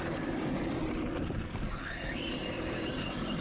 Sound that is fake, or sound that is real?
fake